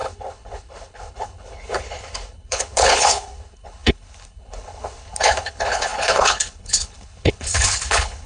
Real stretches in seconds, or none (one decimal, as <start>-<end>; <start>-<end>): none